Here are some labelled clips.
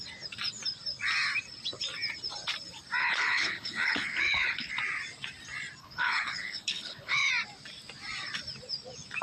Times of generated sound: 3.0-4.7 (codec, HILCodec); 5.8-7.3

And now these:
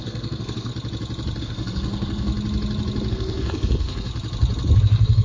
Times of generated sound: 0.0-0.7 (codec, SNAC); 1.4-2.3; 3.1-4.1; 4.8-5.2

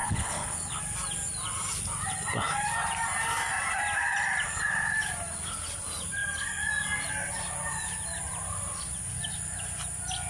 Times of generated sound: 0.0-0.8 (codec, HILCodec)

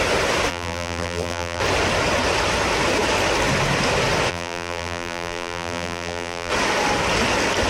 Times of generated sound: 0.5-1.6 (vocoder, BigVGAN v2); 4.3-6.5